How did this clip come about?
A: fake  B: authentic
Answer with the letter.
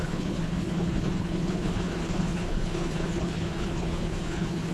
A